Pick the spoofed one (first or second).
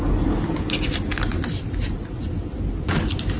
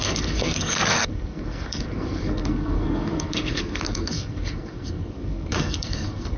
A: second